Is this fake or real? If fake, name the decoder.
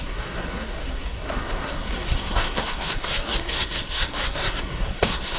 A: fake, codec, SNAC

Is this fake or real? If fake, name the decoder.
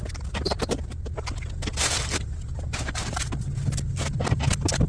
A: real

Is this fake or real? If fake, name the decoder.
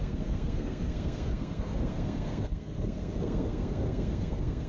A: fake, codec, SNAC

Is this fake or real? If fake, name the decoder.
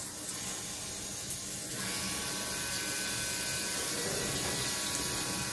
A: real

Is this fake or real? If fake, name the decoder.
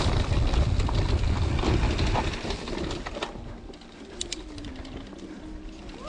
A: real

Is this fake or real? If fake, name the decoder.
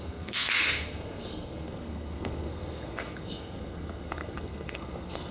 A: fake, codec, SNAC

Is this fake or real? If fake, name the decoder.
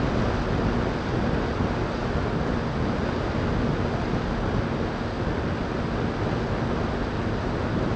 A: real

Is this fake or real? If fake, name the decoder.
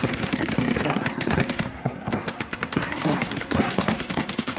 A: fake, codec, SNAC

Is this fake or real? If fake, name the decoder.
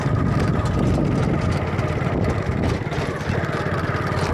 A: real